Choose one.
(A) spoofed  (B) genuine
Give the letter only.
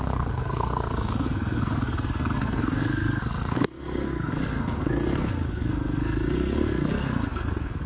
A